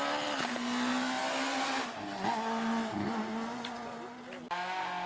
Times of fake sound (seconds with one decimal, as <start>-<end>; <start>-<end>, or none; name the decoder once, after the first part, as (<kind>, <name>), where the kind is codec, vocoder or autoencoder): none

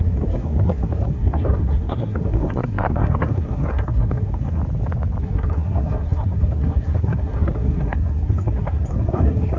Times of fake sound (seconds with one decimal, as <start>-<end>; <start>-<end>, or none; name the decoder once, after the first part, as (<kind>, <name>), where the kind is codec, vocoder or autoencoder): 0.0-4.6 (codec, SNAC); 5.2-9.6

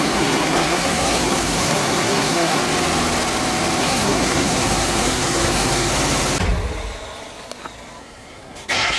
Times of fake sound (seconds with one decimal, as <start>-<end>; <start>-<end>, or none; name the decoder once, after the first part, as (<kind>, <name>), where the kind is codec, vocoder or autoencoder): 0.0-2.6 (codec, SNAC); 3.8-5.9; 8.0-9.0

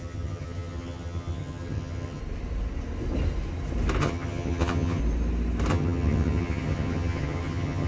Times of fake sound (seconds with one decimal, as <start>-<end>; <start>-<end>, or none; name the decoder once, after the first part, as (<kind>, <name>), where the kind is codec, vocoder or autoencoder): 0.0-2.2 (vocoder, HiFi-GAN); 4.0-5.0; 5.7-7.9

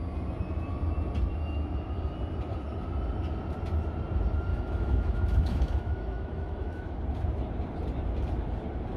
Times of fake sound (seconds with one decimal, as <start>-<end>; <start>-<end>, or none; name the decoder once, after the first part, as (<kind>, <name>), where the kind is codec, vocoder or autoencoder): 4.5-7.0 (autoencoder, DAC-VAE)